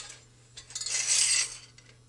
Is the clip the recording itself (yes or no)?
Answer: yes